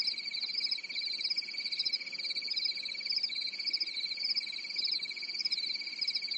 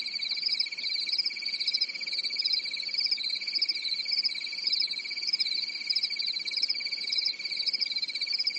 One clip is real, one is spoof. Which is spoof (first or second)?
second